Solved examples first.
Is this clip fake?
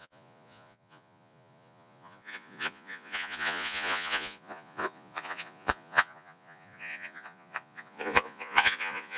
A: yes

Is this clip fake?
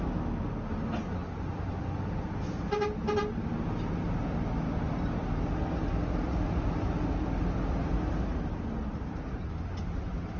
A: no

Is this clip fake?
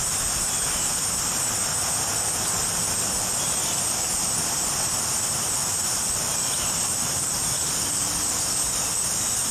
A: no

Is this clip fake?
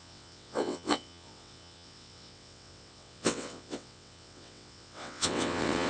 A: yes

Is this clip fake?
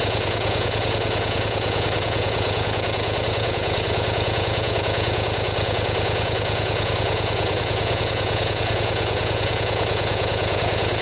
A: yes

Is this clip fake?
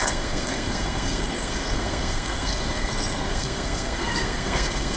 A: yes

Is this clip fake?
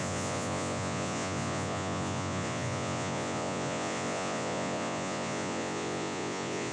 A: yes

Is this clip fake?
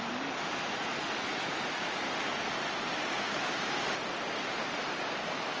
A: no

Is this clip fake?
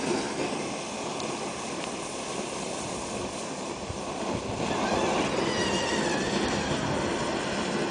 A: yes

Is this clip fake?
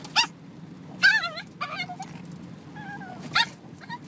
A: no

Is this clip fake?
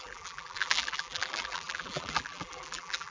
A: yes